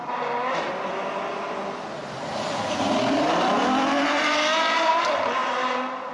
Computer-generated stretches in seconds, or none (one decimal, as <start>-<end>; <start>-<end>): none